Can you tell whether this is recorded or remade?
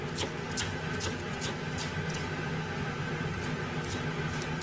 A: recorded